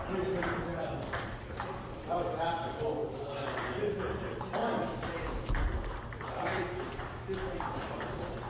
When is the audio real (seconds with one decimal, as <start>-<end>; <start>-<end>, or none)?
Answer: 4.6-6.0